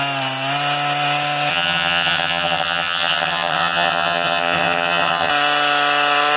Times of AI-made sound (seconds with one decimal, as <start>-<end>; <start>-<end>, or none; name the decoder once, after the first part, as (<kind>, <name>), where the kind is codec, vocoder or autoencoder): 1.5-5.3 (vocoder, HiFi-GAN)